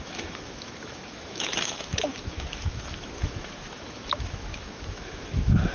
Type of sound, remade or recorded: remade